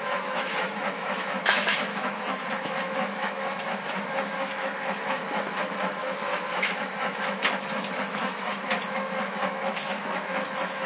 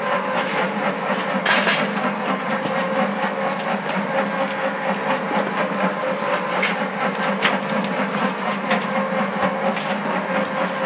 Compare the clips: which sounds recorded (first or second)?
second